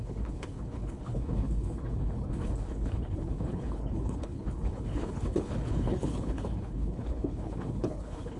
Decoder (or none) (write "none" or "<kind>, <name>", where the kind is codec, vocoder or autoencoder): codec, HILCodec